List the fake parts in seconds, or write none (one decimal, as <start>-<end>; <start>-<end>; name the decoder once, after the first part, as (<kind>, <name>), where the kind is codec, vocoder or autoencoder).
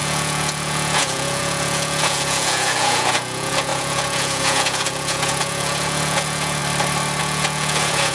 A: 0.0-6.6 (vocoder, Vocos); 7.2-8.1